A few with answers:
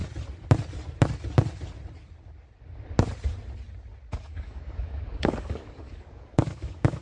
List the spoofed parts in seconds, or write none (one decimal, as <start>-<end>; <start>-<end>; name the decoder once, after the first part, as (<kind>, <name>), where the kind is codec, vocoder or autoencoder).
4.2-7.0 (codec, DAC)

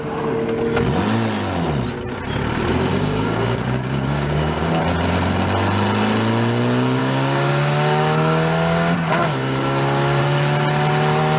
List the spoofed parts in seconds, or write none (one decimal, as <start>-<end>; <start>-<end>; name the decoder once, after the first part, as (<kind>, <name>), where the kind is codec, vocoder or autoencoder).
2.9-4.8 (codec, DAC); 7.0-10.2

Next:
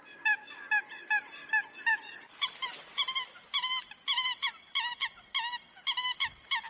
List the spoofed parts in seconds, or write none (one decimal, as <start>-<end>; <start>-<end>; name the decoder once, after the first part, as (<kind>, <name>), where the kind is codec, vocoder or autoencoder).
none

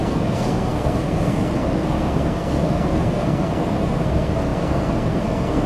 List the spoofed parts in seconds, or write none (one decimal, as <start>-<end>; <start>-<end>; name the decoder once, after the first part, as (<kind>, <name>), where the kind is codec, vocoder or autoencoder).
0.0-5.7 (codec, SNAC)

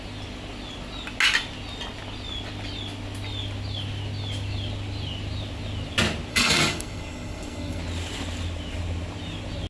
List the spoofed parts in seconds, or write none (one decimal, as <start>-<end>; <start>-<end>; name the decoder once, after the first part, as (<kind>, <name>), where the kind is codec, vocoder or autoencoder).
6.3-7.8 (codec, SNAC)

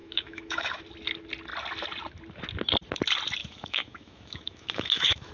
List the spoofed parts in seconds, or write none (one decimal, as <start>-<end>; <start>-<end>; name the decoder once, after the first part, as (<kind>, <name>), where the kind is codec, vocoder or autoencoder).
0.0-0.8 (autoencoder, DAC-VAE); 3.4-5.3